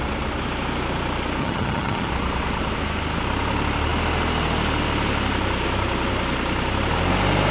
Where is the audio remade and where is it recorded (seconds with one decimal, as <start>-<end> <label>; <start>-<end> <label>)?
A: 0.0-1.4 recorded; 1.4-2.1 remade; 2.1-7.5 recorded